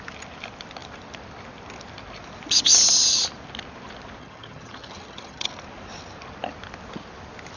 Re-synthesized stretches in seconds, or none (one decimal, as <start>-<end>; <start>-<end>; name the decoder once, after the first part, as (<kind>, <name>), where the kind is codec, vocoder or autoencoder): 4.2-5.5 (vocoder, HiFi-GAN)